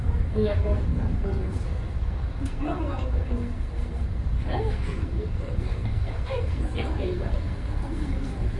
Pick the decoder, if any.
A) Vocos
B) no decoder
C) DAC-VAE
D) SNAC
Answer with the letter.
D